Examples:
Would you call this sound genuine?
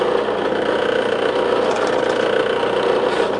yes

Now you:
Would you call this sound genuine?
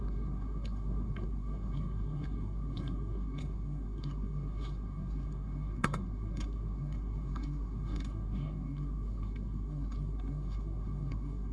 no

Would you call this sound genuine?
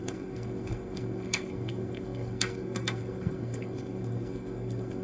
no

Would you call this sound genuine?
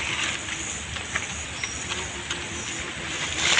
yes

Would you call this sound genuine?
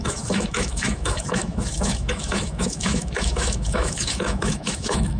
no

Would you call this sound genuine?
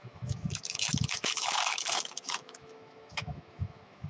no